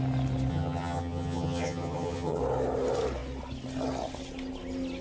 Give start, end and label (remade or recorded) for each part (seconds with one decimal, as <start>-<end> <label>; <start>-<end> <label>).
0.0-0.5 recorded; 0.5-2.4 remade; 2.4-5.0 recorded